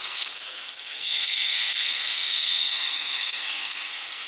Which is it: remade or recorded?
remade